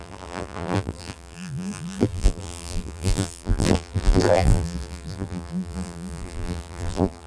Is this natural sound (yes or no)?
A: no